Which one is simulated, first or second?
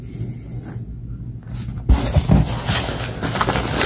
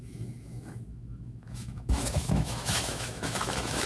second